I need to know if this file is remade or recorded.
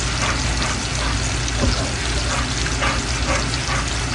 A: recorded